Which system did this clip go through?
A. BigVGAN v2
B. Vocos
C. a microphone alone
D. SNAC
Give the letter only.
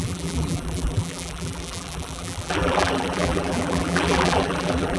A